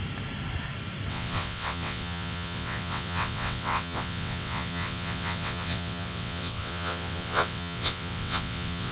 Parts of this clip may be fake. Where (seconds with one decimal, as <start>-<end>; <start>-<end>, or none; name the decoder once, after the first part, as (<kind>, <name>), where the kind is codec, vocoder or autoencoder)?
1.1-8.9 (vocoder, WaveNeXt)